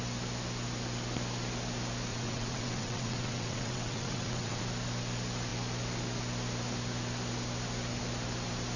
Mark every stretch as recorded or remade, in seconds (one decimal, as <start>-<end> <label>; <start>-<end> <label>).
0.0-2.1 recorded; 2.1-4.6 remade; 4.6-8.8 recorded